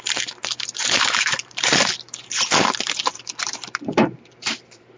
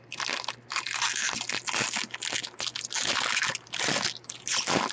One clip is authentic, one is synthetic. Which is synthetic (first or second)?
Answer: first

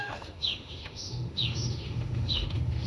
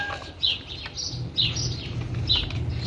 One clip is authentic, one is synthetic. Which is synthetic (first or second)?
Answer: first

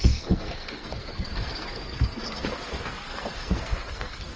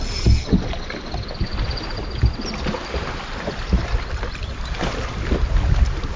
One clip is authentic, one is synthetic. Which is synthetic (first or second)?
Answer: first